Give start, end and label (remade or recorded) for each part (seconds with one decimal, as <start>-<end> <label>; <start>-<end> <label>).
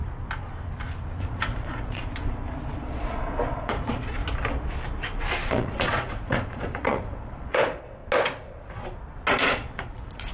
0.0-1.2 recorded; 1.2-2.0 remade; 2.0-2.8 recorded; 2.8-4.2 remade; 4.2-5.5 recorded; 5.5-8.0 remade; 8.0-9.3 recorded; 9.3-10.3 remade